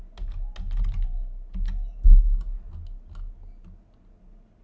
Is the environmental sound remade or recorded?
recorded